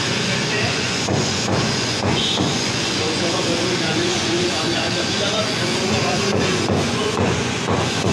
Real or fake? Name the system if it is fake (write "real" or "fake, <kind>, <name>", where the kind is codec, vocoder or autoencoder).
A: fake, vocoder, Vocos